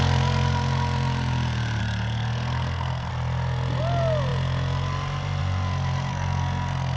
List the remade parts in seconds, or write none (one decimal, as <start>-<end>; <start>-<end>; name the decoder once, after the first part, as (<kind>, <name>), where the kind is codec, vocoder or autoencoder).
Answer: 1.8-3.1 (codec, SNAC); 6.1-7.0